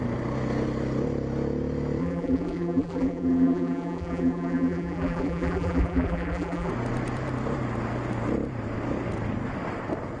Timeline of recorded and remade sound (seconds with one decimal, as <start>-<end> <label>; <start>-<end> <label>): 0.0-2.0 recorded; 2.0-6.7 remade; 6.7-10.2 recorded